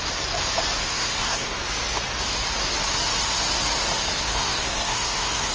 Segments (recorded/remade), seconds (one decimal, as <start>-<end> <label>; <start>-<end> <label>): 0.0-0.8 recorded; 0.8-1.6 remade; 1.6-4.3 recorded; 4.3-5.5 remade